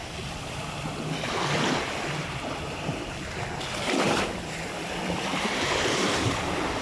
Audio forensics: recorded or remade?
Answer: remade